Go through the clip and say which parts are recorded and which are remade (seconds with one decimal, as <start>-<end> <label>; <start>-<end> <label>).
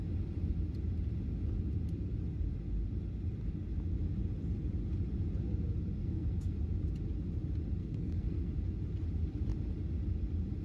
0.0-6.0 recorded; 6.0-6.6 remade; 6.6-7.8 recorded; 7.8-8.5 remade; 8.5-10.6 recorded